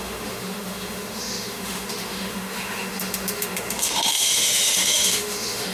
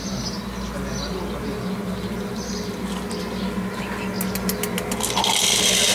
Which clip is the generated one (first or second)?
first